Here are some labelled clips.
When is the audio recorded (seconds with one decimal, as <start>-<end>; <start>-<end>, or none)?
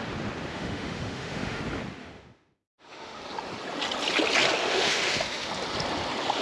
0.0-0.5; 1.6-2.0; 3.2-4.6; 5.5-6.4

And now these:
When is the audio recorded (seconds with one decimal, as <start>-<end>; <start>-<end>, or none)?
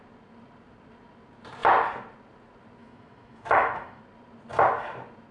0.0-2.8; 4.0-5.3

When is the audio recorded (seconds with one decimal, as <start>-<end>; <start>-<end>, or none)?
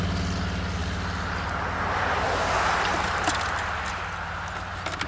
0.0-5.1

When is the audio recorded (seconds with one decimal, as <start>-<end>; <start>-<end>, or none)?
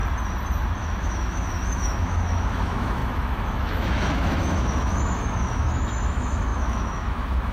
0.0-0.8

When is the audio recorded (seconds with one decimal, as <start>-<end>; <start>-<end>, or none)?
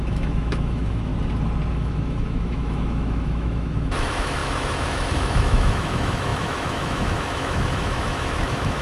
1.1-1.7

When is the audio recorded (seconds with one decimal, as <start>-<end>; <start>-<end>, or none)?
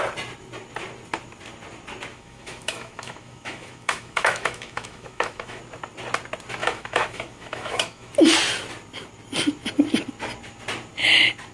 0.0-2.1; 5.6-6.6; 8.1-11.5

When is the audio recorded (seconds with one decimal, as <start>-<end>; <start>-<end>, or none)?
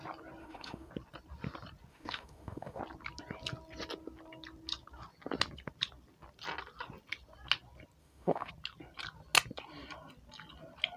0.0-0.4; 0.9-1.9; 2.8-8.0; 8.5-11.0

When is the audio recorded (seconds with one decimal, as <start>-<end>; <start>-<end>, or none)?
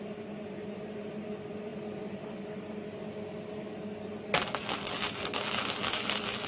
0.0-6.5